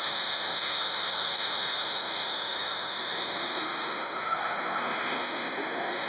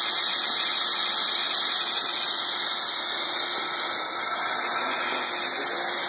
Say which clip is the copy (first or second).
first